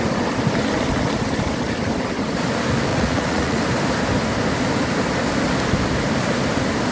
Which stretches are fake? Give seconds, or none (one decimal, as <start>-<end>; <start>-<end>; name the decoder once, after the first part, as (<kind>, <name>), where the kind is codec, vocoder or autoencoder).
2.9-3.6 (vocoder, Vocos)